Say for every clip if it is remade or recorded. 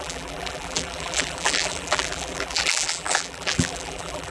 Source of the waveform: remade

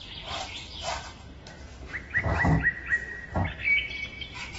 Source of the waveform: remade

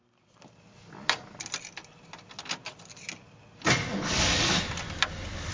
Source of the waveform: recorded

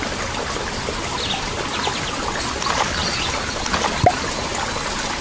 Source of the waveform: recorded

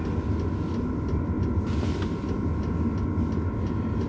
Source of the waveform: recorded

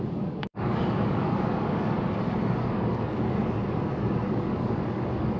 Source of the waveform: remade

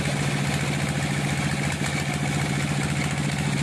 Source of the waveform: recorded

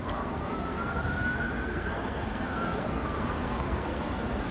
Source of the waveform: remade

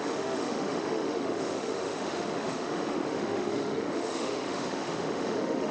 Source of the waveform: remade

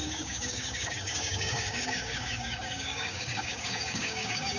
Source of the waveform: remade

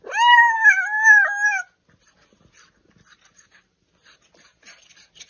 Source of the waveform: recorded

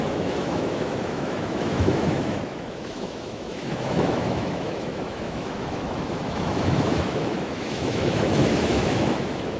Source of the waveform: remade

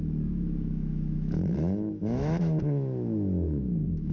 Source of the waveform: remade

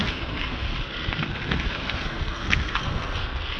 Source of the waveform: remade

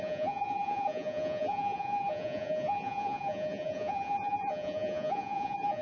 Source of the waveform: remade